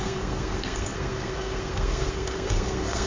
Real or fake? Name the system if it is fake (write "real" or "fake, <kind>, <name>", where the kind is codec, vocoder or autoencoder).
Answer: fake, codec, SNAC